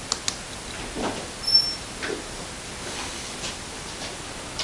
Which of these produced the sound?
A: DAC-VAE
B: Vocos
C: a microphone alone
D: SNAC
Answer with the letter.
C